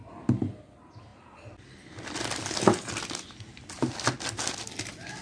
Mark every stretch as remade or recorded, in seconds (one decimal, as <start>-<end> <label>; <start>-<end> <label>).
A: 0.0-5.2 recorded